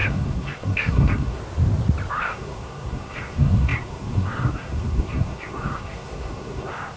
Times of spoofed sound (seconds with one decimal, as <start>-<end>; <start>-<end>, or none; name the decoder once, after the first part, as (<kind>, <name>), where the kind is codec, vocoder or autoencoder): 0.0-1.4 (codec, SNAC); 2.1-7.0